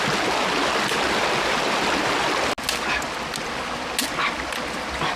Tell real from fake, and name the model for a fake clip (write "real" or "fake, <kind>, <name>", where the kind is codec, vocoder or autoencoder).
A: real